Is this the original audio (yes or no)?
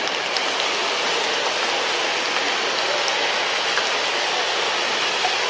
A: yes